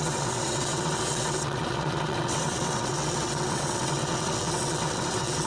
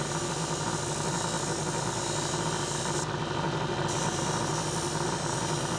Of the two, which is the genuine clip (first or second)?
second